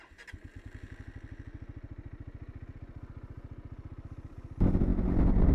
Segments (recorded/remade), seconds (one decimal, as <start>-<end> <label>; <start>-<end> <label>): 0.0-5.5 recorded